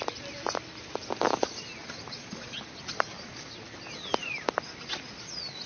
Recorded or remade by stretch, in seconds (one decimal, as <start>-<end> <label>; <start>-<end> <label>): 0.0-5.7 recorded